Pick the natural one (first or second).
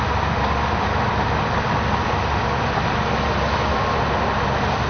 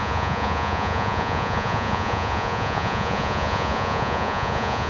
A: first